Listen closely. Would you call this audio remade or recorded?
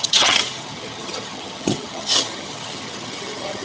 remade